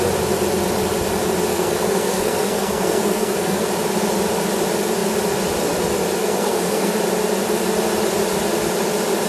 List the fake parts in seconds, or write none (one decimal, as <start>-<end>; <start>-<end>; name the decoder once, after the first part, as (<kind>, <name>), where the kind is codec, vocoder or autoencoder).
1.5-3.7 (codec, SNAC); 6.2-6.9

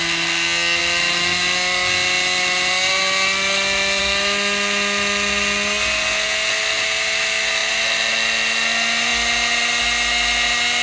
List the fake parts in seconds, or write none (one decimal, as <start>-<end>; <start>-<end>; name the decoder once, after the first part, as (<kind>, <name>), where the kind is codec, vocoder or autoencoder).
none

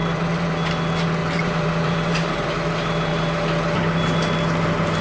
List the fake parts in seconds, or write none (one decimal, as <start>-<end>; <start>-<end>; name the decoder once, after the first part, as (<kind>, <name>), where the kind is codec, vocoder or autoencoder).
0.0-0.5 (vocoder, BigVGAN v2); 1.2-2.5

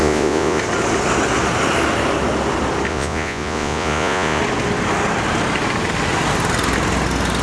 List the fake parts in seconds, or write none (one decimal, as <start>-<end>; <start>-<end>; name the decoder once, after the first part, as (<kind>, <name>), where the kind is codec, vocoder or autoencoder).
0.0-0.6 (vocoder, Vocos); 2.9-4.4

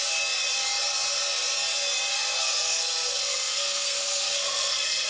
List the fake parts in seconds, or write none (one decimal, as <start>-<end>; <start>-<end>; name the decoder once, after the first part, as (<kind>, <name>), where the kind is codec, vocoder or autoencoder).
2.1-5.1 (codec, SNAC)

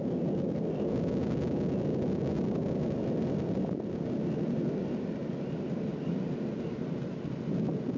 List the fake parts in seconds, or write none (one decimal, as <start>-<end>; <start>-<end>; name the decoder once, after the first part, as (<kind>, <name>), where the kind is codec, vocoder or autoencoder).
none

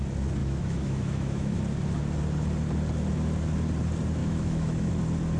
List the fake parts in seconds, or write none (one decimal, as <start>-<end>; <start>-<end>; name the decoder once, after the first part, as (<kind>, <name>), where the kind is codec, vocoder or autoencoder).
0.4-1.6 (autoencoder, DAC-VAE); 4.2-4.9

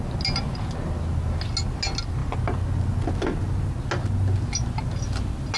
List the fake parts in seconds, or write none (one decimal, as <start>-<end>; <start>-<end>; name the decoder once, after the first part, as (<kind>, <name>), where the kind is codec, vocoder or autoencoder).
none